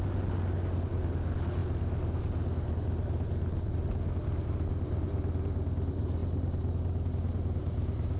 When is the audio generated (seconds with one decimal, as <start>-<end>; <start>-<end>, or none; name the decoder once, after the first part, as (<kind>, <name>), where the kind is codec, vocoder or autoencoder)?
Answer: none